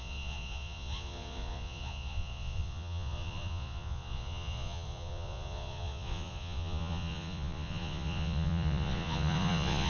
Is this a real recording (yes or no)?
no